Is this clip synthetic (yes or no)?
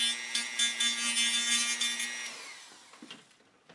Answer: no